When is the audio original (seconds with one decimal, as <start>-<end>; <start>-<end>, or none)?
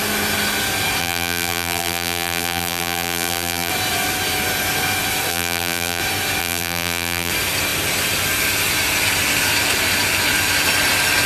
0.0-1.0; 3.7-5.3; 6.0-6.4; 7.3-11.3